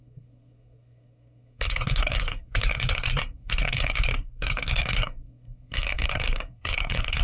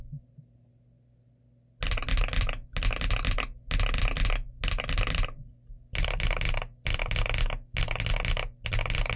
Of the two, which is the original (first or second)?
second